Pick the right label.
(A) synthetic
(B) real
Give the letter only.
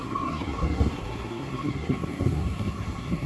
A